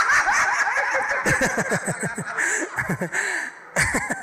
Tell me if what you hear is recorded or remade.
recorded